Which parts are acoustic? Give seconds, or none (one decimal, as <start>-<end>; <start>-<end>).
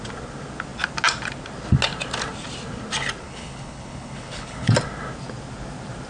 0.0-3.2; 4.7-6.1